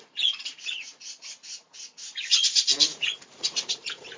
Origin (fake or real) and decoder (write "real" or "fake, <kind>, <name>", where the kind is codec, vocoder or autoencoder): fake, vocoder, Vocos